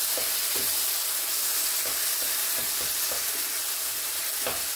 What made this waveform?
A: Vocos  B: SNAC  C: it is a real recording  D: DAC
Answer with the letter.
C